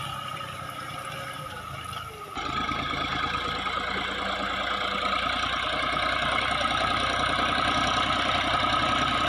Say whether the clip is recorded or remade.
recorded